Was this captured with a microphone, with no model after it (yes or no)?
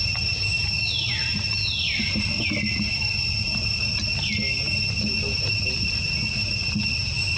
yes